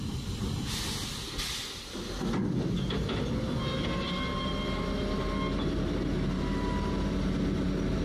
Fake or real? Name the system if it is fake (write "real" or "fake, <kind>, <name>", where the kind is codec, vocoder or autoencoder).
real